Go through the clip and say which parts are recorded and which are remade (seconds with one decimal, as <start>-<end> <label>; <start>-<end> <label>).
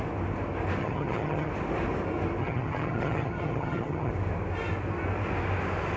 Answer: 0.0-0.8 recorded; 0.8-1.5 remade; 1.5-2.4 recorded; 2.4-4.1 remade; 4.1-6.0 recorded